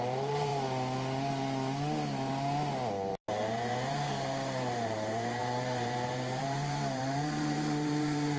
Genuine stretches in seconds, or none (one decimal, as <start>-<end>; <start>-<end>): 0.5-3.1